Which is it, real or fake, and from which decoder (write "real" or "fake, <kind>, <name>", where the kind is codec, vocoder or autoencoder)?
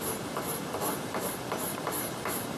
real